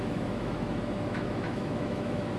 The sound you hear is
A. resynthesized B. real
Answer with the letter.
A